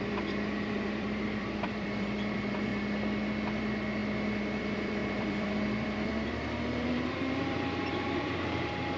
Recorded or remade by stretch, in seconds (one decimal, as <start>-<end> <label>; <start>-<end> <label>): 0.0-2.7 remade; 2.7-3.6 recorded; 3.6-4.0 remade; 4.0-4.6 recorded; 4.6-9.0 remade